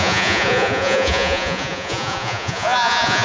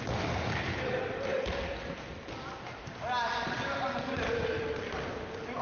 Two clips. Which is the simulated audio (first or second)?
first